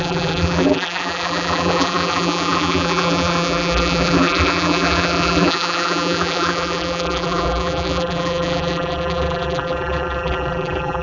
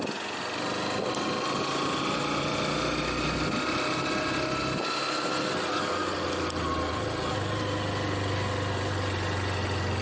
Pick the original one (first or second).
second